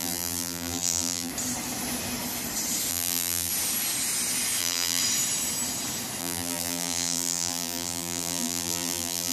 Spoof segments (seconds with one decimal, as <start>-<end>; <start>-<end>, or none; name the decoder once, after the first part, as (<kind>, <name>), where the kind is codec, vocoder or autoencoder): 0.0-1.3 (vocoder, BigVGAN v2); 2.9-3.5; 4.6-5.0; 6.2-9.3